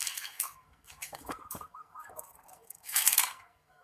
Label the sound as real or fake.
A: fake